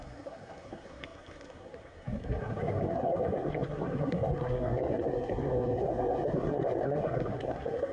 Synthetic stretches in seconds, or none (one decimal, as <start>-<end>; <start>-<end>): 0.0-7.9